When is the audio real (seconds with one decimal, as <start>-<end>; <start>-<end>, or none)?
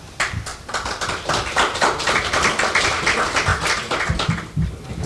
0.0-5.1